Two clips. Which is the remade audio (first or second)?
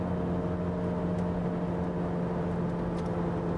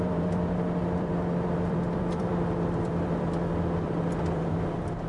second